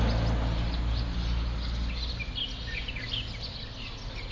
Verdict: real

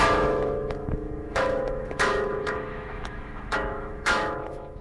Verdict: fake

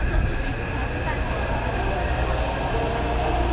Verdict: real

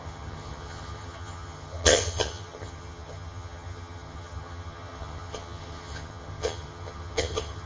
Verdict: fake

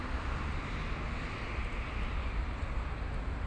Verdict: real